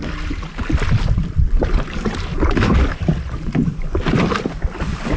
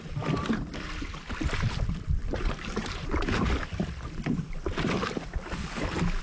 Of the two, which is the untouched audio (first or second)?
first